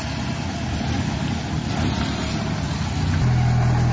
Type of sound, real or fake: real